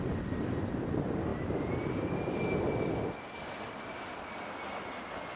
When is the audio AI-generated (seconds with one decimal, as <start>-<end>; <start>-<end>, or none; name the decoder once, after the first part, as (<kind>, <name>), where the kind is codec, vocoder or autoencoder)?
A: none